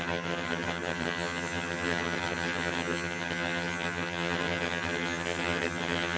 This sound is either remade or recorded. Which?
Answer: remade